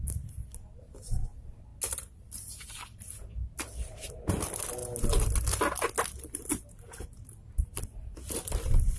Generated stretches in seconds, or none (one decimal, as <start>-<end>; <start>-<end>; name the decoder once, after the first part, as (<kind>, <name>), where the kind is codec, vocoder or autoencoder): none